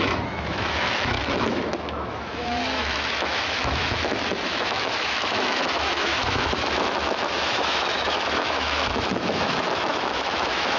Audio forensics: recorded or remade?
remade